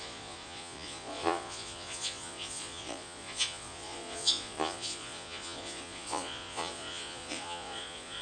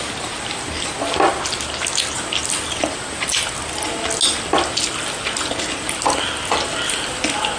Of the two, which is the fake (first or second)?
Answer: first